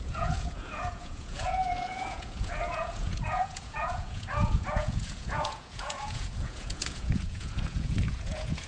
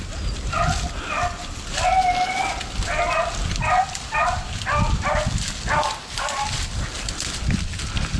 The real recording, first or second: second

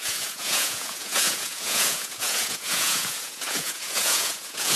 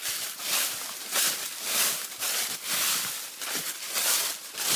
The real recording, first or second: second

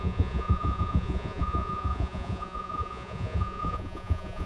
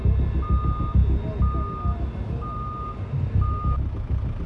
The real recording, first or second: second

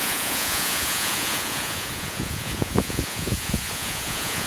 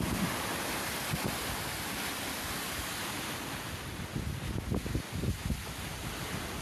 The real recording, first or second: second